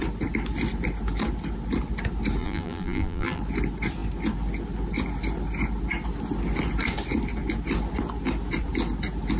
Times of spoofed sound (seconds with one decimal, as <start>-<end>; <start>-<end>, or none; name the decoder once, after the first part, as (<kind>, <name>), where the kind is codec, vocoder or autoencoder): 2.4-3.4 (vocoder, BigVGAN v2)

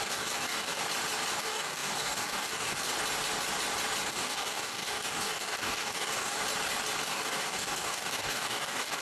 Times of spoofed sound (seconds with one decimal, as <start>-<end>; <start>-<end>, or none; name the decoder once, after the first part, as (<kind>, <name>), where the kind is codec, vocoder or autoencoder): 0.0-0.8 (codec, DAC); 1.4-2.9; 4.1-6.4; 7.0-9.0

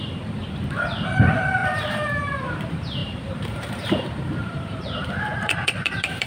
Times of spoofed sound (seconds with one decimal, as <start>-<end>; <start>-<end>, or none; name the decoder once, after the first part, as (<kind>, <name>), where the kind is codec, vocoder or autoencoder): 0.0-6.3 (vocoder, BigVGAN v2)

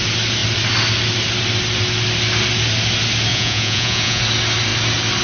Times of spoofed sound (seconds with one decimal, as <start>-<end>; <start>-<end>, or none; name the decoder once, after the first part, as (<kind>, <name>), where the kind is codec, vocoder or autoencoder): 3.3-4.2 (vocoder, Vocos)

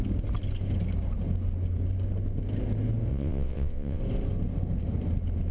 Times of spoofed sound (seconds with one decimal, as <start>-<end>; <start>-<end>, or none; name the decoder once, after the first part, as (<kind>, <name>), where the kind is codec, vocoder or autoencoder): 3.1-4.0 (vocoder, WaveNeXt)